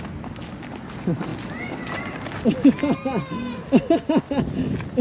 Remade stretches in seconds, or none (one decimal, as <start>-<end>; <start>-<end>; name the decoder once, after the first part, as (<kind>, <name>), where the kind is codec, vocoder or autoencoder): none